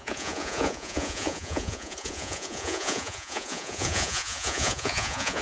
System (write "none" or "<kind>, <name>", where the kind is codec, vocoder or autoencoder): vocoder, Vocos